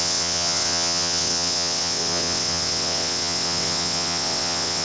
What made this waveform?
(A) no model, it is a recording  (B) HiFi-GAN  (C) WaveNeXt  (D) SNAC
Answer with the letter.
C